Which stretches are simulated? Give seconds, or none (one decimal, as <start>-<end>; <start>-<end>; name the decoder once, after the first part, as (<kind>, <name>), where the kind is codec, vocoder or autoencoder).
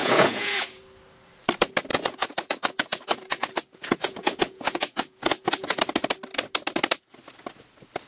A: 0.0-0.8 (vocoder, Vocos); 1.9-5.8